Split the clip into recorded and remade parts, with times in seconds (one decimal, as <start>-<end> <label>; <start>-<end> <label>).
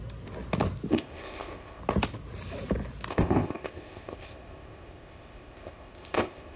0.0-0.9 recorded; 0.9-1.8 remade; 1.8-3.1 recorded; 3.1-6.6 remade